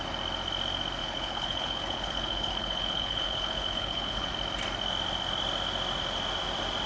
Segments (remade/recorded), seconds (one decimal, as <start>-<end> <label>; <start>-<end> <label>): 0.0-1.0 recorded; 1.0-4.3 remade; 4.3-6.9 recorded